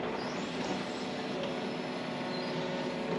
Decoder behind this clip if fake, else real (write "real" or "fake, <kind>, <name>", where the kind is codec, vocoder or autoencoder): real